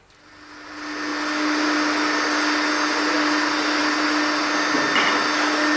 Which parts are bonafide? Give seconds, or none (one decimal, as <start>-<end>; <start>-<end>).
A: 0.0-5.8